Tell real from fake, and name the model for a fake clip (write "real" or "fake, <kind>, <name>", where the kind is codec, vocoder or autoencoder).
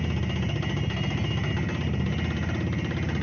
real